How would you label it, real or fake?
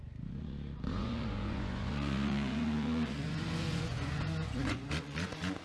fake